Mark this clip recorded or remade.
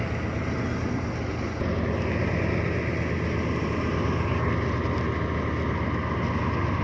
recorded